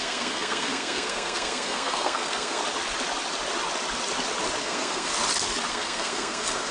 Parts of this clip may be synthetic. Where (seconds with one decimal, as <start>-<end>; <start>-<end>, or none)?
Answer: 0.0-2.6; 4.6-5.1; 5.7-6.7